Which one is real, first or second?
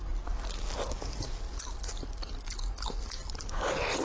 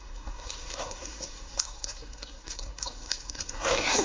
first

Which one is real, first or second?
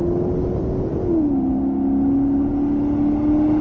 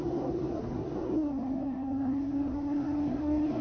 first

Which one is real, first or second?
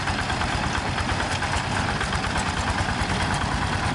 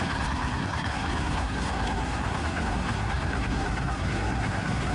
first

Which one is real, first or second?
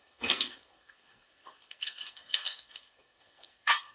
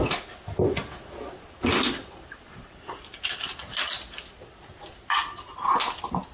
second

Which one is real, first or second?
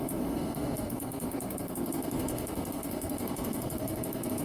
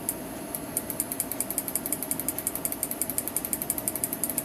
second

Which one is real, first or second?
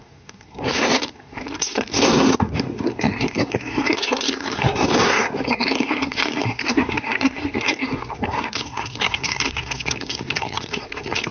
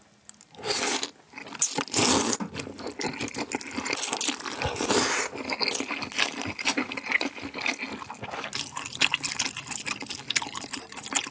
second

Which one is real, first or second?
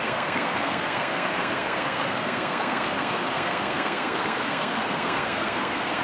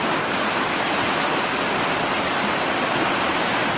second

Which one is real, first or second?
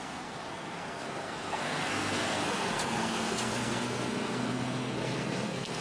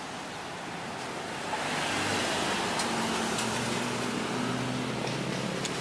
second